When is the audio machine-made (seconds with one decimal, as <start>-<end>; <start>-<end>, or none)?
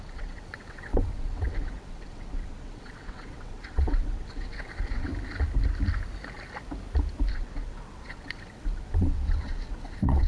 0.0-5.1; 7.3-10.3